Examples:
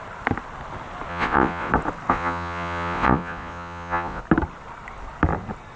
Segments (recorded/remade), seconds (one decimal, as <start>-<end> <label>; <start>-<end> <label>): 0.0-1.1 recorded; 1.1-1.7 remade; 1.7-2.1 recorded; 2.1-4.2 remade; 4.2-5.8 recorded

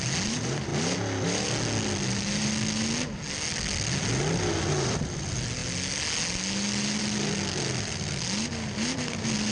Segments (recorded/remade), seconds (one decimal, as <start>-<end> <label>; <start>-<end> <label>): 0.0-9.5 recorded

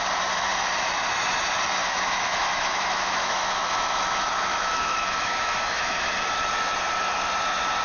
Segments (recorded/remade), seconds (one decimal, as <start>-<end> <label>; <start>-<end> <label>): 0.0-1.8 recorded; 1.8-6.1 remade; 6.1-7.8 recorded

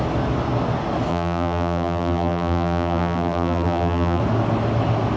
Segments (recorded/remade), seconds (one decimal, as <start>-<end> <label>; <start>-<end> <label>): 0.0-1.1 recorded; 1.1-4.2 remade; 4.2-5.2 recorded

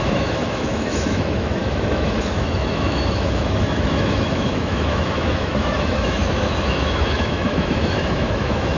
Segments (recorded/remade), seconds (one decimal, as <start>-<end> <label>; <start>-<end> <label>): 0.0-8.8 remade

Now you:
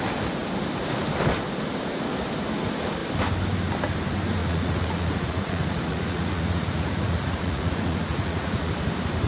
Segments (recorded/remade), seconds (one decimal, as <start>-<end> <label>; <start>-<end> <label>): 0.0-4.4 recorded; 4.4-8.7 remade; 8.7-9.3 recorded

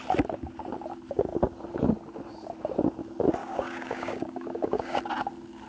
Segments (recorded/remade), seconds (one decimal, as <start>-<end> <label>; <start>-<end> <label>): 0.0-3.4 recorded; 3.4-5.0 remade; 5.0-5.7 recorded

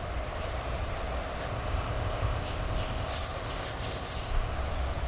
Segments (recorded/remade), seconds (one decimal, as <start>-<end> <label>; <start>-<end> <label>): 0.0-1.4 recorded; 1.4-4.5 remade; 4.5-5.1 recorded